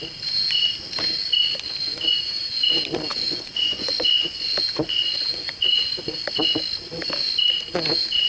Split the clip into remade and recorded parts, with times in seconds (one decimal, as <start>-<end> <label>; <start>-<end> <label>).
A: 0.0-1.9 recorded; 1.9-2.6 remade; 2.6-3.1 recorded; 3.1-6.2 remade; 6.2-8.3 recorded